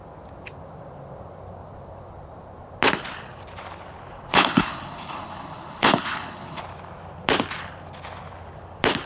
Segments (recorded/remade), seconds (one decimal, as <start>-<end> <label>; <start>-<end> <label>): 0.0-4.3 recorded; 4.3-6.6 remade; 6.6-9.1 recorded